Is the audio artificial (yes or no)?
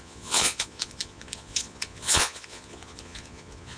yes